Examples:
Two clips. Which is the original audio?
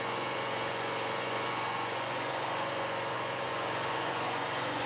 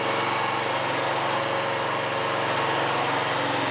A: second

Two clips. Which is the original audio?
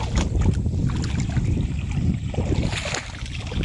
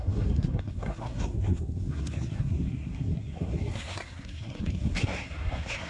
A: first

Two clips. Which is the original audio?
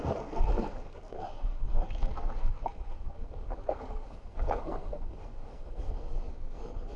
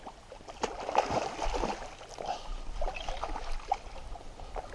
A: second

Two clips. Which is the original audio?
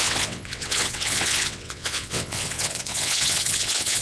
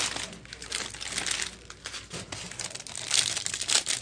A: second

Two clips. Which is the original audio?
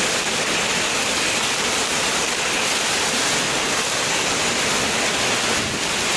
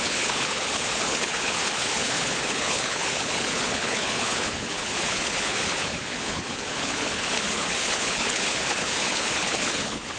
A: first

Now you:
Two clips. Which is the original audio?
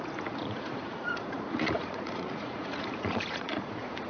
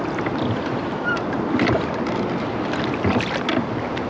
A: second